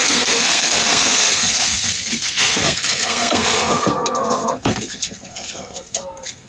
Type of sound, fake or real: fake